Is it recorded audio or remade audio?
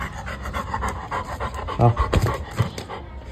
recorded